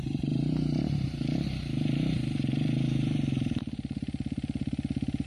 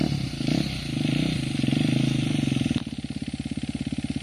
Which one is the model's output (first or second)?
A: first